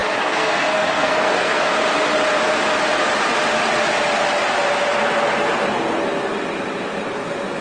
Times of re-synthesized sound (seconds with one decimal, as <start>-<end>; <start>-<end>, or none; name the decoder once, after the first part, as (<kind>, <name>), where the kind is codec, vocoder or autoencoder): 0.0-1.6 (codec, SNAC)